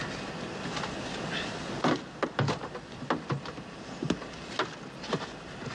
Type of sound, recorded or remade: recorded